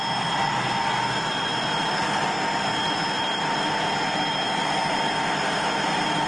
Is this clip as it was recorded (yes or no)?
yes